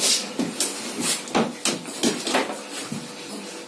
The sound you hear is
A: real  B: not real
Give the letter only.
A